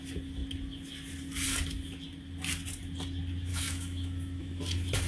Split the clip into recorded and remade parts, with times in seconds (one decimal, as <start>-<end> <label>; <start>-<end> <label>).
0.0-3.5 recorded; 3.5-4.6 remade; 4.6-5.1 recorded